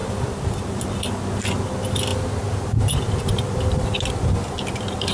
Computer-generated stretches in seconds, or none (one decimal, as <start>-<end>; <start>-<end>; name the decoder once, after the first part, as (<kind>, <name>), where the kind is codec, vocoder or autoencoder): none

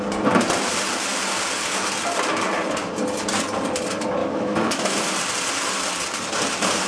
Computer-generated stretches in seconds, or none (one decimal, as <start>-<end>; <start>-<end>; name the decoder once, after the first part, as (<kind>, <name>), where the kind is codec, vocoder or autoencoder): 4.2-5.1 (autoencoder, DAC-VAE)

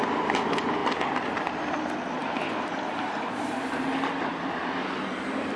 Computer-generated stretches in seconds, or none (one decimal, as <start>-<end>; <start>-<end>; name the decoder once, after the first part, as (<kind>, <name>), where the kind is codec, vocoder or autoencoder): 0.0-5.6 (vocoder, BigVGAN v2)

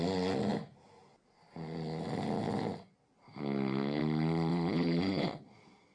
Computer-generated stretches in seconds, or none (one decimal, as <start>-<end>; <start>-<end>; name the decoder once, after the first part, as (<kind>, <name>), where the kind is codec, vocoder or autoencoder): 4.5-5.4 (vocoder, Vocos)

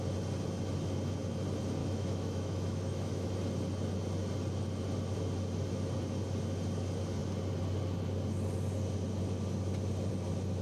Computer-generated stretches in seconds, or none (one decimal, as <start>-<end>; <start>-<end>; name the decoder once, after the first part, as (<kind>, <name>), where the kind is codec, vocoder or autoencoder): 1.8-3.3 (autoencoder, DAC-VAE)